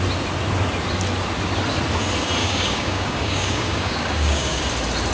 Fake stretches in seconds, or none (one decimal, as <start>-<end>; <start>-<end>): 2.4-4.6